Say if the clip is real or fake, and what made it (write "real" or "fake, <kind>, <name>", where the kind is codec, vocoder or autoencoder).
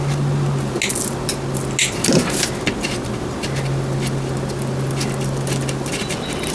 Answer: real